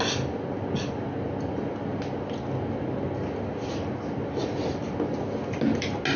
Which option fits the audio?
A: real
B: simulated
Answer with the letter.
A